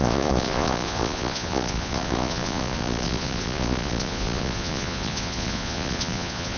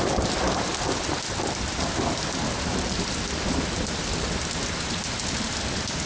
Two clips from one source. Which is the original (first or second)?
second